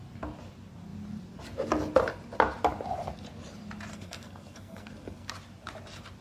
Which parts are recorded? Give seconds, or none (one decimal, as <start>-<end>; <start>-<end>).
0.0-3.9; 5.3-6.2